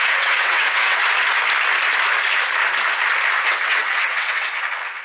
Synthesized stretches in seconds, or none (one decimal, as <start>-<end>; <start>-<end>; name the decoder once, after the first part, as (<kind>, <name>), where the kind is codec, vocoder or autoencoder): 0.0-1.0 (vocoder, WaveNeXt); 3.4-5.0